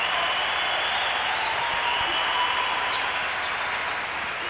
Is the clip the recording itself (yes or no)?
yes